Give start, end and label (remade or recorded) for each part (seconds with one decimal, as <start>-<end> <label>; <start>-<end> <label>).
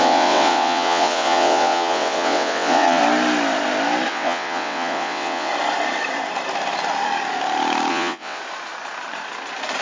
0.0-3.0 remade; 3.0-4.1 recorded; 4.1-5.5 remade; 5.5-7.9 recorded; 7.9-8.4 remade; 8.4-9.8 recorded